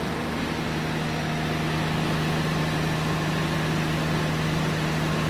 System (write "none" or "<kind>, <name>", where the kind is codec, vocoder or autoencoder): none